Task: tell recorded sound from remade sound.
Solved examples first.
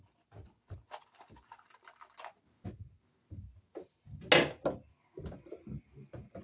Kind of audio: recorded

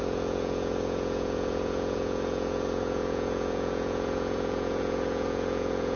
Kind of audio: remade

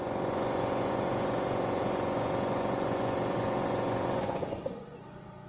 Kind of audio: remade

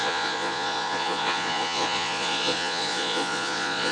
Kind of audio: remade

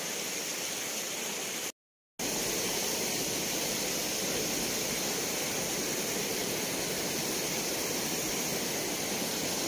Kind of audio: recorded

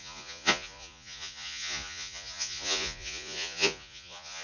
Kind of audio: remade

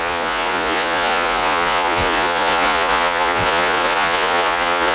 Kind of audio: remade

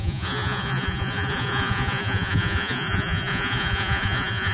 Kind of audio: remade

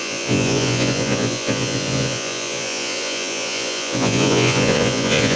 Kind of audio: remade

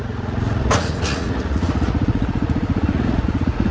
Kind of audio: remade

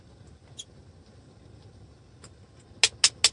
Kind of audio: recorded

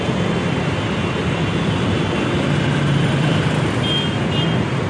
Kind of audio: recorded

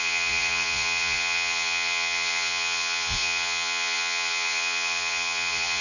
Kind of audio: remade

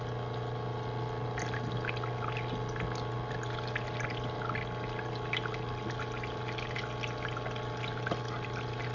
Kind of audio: recorded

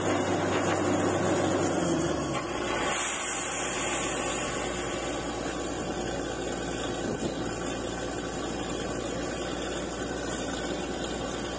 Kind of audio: recorded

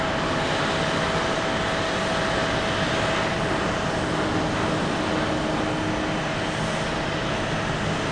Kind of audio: recorded